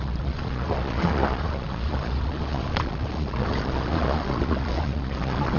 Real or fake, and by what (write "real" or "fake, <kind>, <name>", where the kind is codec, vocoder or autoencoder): fake, vocoder, Vocos